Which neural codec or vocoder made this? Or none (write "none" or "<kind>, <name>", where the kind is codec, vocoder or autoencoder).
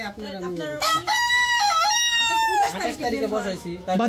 autoencoder, DAC-VAE